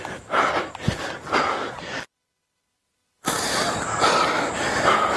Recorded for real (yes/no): yes